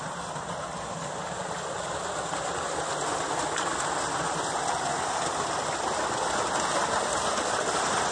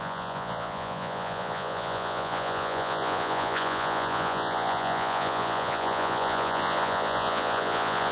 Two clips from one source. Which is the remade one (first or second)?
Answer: second